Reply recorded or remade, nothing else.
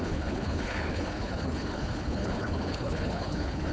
remade